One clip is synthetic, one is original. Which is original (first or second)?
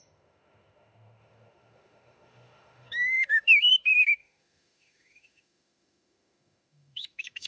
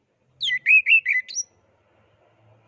second